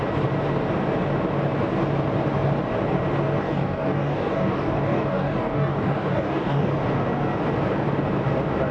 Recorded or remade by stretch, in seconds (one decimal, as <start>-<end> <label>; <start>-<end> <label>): 0.0-3.4 recorded; 3.4-6.7 remade; 6.7-8.7 recorded